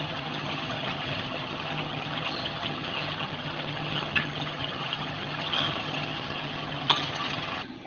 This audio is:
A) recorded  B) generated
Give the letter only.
B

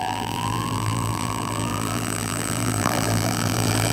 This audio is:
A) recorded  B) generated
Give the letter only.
B